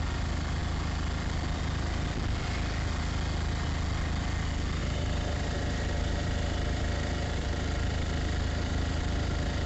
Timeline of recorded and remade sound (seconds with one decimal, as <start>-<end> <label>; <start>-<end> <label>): 0.0-4.8 recorded; 4.8-9.7 remade